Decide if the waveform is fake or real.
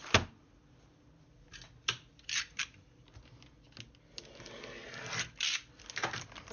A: real